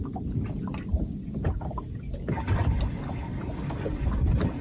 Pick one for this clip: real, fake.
real